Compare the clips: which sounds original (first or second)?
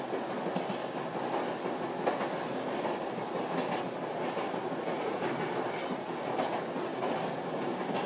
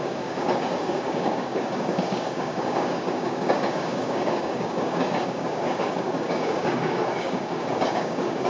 first